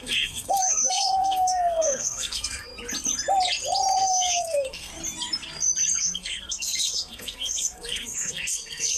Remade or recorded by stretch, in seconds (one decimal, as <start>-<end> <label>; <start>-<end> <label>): 0.0-2.7 remade; 2.7-4.0 recorded; 4.0-4.9 remade; 4.9-6.0 recorded; 6.0-9.0 remade